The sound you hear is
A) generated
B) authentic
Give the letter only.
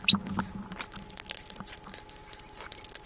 B